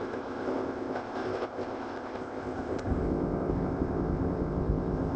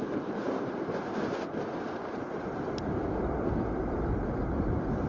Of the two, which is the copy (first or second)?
first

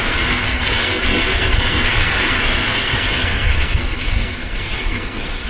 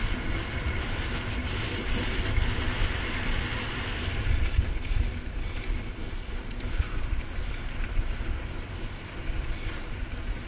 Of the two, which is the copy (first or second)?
first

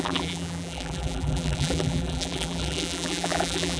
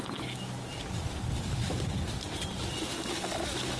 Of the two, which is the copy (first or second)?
first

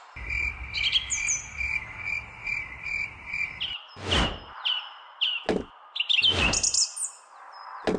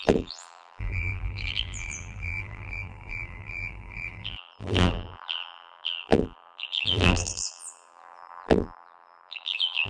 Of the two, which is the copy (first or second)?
second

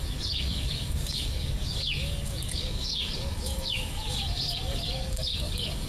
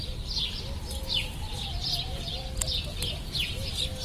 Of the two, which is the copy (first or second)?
first